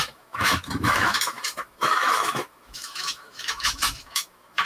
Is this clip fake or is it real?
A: fake